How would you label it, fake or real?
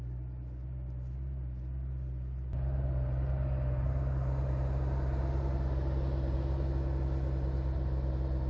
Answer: real